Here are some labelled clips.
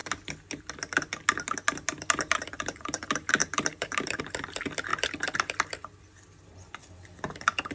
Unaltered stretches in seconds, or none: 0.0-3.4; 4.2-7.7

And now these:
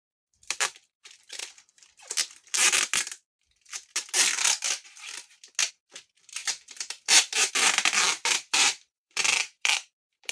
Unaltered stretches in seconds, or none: 1.4-5.7

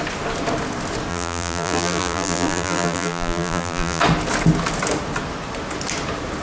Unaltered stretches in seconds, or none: 0.0-1.1; 4.0-6.4

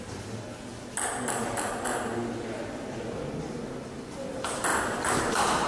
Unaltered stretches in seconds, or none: 0.7-4.1

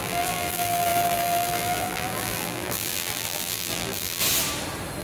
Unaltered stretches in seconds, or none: 4.2-5.0